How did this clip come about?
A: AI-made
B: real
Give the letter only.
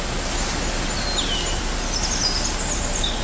B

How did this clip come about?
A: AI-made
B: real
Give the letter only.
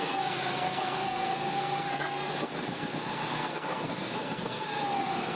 A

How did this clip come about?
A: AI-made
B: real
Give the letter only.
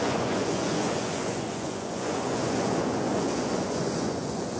A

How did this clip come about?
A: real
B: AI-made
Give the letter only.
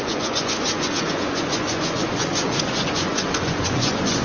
B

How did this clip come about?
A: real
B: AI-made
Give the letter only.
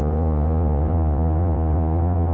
B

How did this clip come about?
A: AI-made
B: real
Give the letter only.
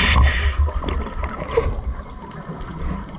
B